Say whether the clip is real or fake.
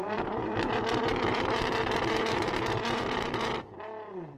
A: fake